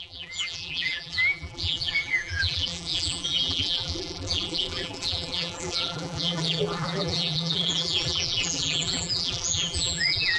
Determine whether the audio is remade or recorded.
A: remade